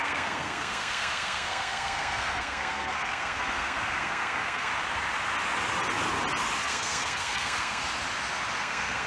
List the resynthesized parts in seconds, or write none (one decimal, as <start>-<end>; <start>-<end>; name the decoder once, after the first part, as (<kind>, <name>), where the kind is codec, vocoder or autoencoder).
0.0-4.7 (codec, SNAC); 6.6-7.8; 8.6-9.1